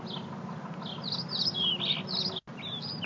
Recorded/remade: recorded